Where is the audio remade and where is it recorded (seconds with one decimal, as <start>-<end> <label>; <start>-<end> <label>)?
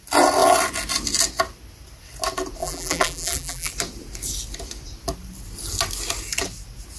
0.0-2.6 recorded; 2.6-3.7 remade; 3.7-7.0 recorded